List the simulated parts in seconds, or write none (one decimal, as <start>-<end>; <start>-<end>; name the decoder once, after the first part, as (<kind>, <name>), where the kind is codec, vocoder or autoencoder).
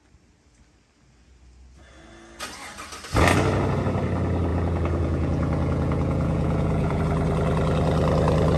4.5-7.0 (vocoder, Vocos)